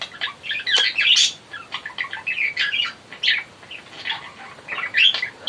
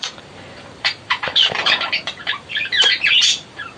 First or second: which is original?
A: first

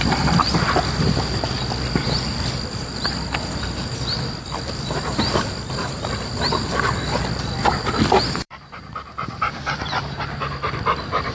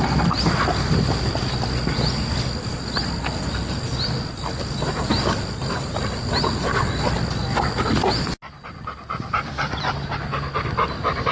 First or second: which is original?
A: second